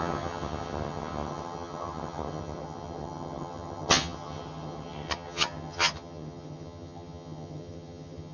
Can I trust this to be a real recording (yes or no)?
no